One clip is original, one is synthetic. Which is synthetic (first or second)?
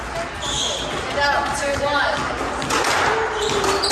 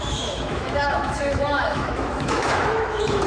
second